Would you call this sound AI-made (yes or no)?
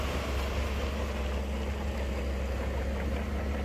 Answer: no